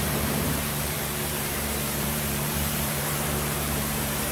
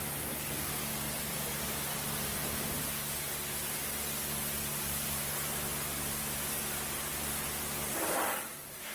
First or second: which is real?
second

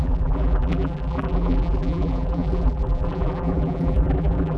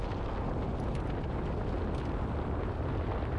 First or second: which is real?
second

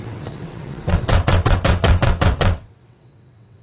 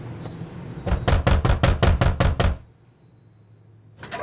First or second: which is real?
second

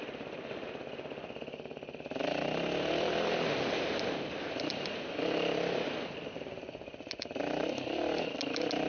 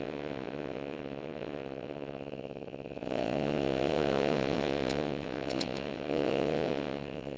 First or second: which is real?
first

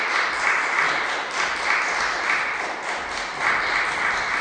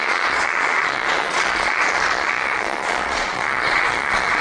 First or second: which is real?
first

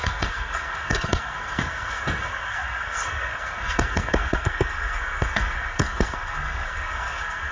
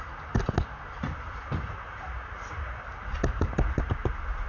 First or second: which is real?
second